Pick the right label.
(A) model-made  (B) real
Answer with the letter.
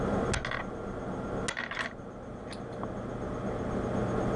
B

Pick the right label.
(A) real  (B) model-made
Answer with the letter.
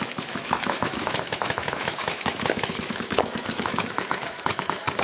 B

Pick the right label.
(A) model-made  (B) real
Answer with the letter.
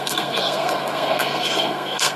A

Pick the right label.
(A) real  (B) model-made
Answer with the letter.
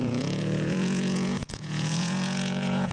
B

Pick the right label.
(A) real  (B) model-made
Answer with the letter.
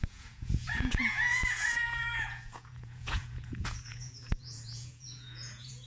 B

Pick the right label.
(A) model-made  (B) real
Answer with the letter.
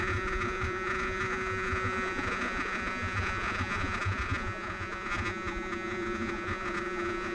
A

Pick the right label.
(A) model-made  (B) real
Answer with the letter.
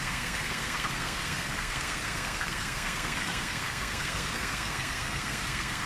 A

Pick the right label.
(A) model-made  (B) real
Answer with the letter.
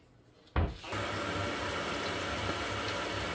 B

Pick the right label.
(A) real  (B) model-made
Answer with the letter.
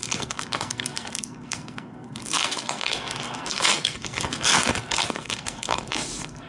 B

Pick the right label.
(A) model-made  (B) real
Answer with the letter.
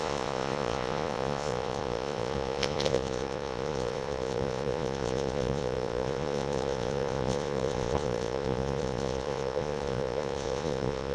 A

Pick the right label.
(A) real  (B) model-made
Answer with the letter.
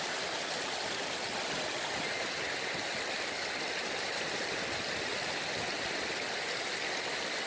A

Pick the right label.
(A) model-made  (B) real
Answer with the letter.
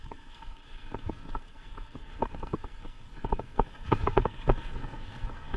A